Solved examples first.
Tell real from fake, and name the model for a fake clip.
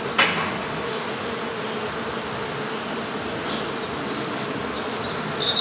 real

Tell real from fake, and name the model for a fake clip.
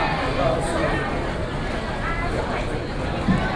real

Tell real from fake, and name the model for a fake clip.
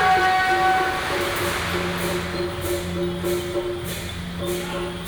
real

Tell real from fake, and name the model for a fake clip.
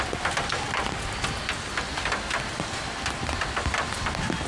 real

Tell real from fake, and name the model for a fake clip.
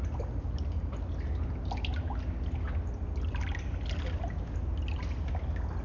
real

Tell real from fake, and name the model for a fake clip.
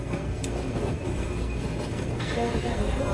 fake, codec, SNAC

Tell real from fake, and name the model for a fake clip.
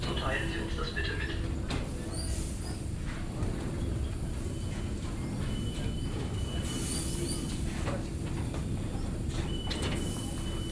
real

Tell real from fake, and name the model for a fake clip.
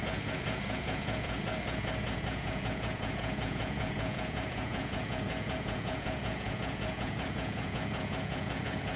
fake, vocoder, Vocos